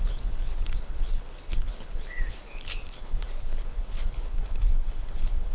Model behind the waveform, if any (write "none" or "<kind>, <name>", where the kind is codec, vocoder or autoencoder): codec, HILCodec